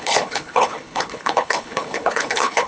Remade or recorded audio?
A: remade